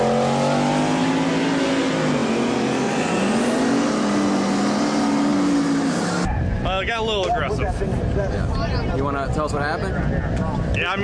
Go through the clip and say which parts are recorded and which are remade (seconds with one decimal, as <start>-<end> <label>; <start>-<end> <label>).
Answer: 0.0-11.0 recorded